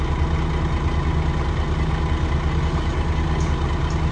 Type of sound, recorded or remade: recorded